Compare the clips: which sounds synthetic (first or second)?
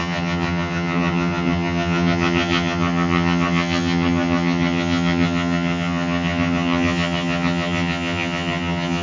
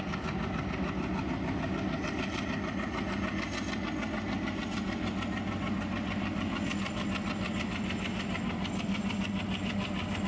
first